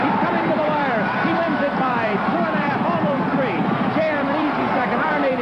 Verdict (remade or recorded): remade